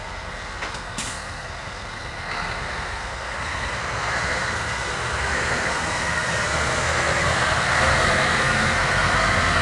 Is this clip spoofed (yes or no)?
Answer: yes